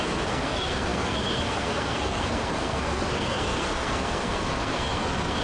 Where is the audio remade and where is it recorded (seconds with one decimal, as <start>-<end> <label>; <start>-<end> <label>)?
0.0-5.4 remade